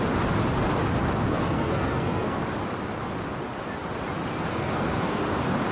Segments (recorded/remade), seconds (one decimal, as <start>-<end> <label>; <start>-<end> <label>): 0.0-1.3 recorded; 1.3-2.4 remade; 2.4-4.5 recorded; 4.5-5.2 remade; 5.2-5.7 recorded